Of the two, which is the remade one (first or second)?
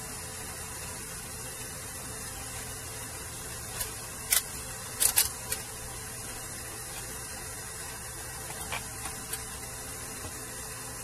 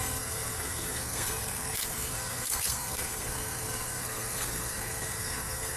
second